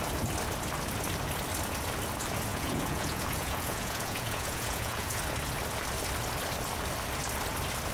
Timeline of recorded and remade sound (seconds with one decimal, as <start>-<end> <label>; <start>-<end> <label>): 0.0-2.5 recorded; 2.5-5.2 remade; 5.2-7.9 recorded